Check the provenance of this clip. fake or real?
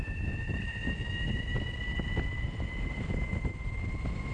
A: real